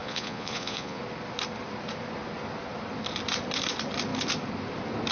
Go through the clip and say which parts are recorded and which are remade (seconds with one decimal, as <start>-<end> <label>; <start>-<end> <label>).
0.0-1.0 remade; 1.0-5.1 recorded